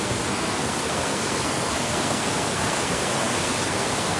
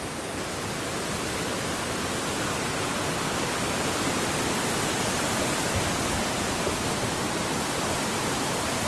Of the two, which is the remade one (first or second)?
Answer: first